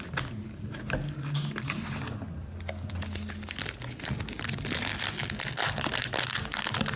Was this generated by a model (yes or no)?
no